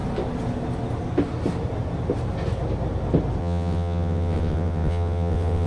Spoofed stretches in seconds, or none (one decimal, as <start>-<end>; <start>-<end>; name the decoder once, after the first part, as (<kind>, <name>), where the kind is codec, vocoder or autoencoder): 3.4-5.7 (vocoder, WaveNeXt)